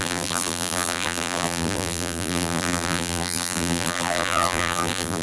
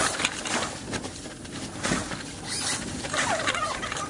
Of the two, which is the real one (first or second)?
second